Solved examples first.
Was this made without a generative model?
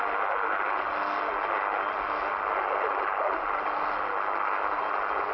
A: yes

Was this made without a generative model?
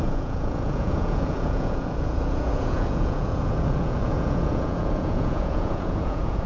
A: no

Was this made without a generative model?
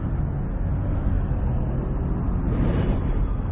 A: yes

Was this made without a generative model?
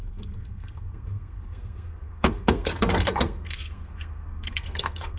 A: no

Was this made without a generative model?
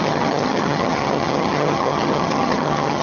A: no